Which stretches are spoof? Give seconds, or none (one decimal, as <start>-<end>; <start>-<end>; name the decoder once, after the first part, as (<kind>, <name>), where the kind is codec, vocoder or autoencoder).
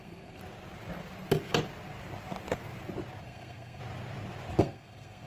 0.0-0.4 (codec, SNAC); 3.2-3.8; 4.6-5.3